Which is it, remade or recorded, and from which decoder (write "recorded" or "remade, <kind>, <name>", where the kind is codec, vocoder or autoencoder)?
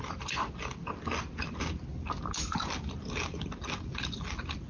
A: recorded